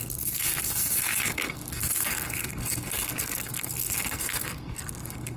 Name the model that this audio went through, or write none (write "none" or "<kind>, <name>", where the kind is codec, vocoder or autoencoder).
codec, SNAC